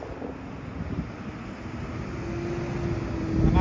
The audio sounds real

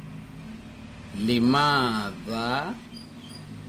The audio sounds real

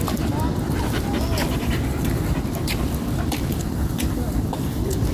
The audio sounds fake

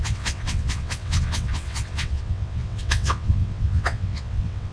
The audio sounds fake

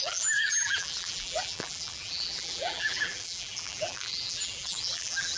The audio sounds fake